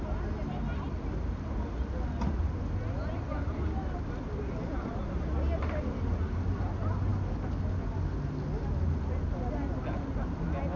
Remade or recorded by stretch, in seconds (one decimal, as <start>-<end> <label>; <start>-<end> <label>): 0.0-10.8 recorded

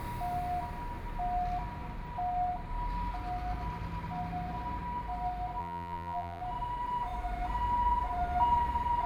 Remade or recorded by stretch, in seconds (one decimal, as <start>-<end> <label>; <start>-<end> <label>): 0.0-5.6 recorded; 5.6-6.4 remade; 6.4-9.1 recorded

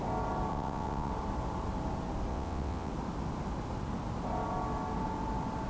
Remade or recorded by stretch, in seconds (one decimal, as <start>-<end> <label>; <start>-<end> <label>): 0.0-0.5 recorded; 0.5-1.1 remade; 1.1-2.3 recorded; 2.3-2.9 remade; 2.9-5.7 recorded

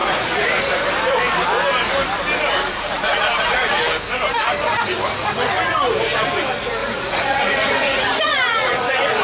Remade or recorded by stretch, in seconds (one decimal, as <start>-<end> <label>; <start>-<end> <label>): 0.0-0.7 remade; 0.7-2.7 recorded; 2.7-3.8 remade; 3.8-6.8 recorded; 6.8-9.2 remade

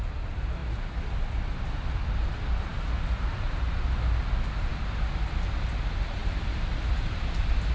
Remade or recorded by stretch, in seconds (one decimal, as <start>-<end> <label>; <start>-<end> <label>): 0.0-7.7 recorded

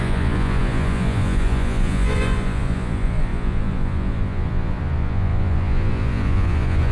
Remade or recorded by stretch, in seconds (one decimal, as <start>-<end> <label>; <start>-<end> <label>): 0.0-6.9 remade

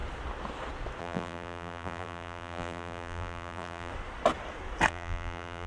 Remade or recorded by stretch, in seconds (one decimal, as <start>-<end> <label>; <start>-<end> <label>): 0.0-1.0 recorded; 1.0-3.9 remade; 3.9-4.9 recorded; 4.9-5.7 remade

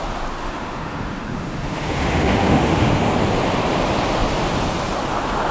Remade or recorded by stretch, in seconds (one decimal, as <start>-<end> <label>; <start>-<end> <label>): 0.0-0.4 recorded; 0.4-3.0 remade; 3.0-5.5 recorded